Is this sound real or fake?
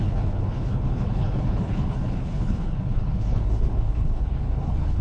fake